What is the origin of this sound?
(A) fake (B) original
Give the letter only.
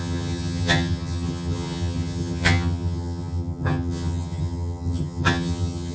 A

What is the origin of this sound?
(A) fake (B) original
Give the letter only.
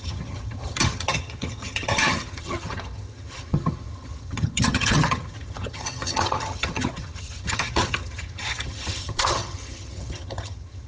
A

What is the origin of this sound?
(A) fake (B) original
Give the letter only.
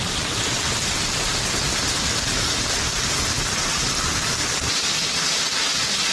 B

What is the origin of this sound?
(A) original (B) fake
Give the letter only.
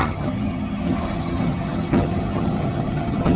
B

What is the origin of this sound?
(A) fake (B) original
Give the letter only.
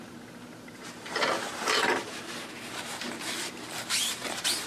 A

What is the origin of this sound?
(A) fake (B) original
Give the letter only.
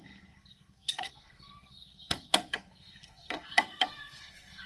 A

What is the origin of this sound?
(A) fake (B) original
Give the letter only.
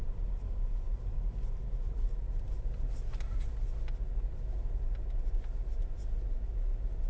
B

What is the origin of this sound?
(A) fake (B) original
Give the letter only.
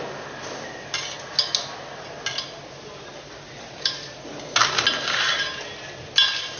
B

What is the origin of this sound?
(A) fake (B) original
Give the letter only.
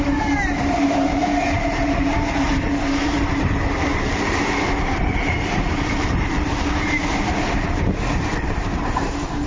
A